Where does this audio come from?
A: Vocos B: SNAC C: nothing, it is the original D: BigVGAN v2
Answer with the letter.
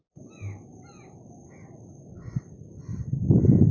C